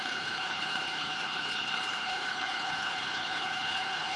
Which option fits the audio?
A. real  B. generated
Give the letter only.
B